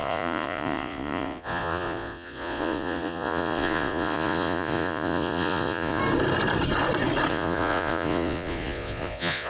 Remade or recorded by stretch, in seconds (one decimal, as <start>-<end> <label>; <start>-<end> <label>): 0.0-6.0 remade; 6.0-7.3 recorded; 7.3-9.5 remade